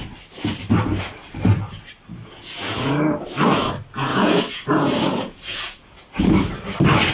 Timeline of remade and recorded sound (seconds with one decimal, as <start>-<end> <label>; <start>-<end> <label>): 0.0-2.1 recorded; 2.1-2.9 remade; 2.9-4.1 recorded; 4.1-6.3 remade; 6.3-7.1 recorded